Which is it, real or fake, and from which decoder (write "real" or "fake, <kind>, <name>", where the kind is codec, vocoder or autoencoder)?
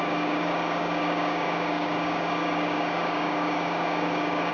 fake, codec, DAC